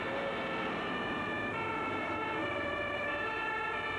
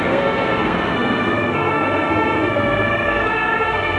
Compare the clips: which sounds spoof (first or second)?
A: second